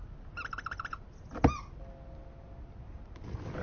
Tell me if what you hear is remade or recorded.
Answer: recorded